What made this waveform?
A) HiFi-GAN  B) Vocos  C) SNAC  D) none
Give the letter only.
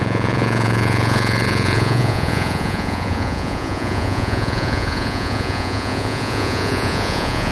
B